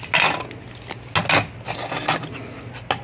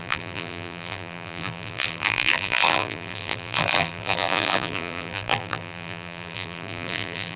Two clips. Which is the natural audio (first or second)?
first